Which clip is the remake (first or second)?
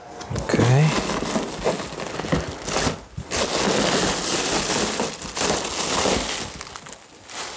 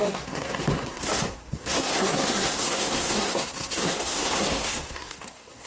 second